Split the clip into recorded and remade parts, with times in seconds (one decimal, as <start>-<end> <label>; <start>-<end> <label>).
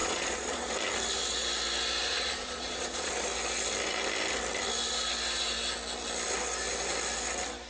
0.0-0.7 remade; 0.7-2.0 recorded; 2.0-3.1 remade; 3.1-7.7 recorded